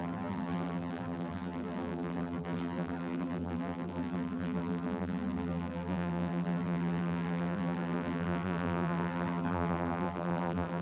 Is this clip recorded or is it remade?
remade